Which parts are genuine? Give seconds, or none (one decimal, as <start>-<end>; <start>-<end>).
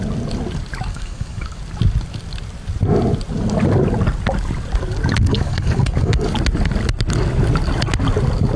0.0-0.9; 1.6-5.3; 6.3-8.6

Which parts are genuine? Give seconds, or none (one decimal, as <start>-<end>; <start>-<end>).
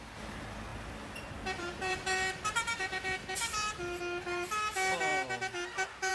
0.0-0.7; 4.0-6.1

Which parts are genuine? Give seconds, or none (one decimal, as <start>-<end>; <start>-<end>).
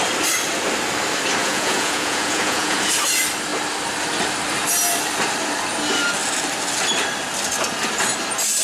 0.0-1.4; 2.9-8.6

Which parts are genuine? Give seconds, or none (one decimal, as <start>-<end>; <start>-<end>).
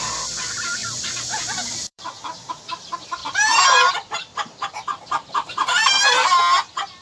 0.0-0.8; 2.5-3.2; 3.9-4.3; 6.0-7.0